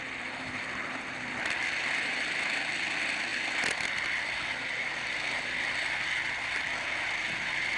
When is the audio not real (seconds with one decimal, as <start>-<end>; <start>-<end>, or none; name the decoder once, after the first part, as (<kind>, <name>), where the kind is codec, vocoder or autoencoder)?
none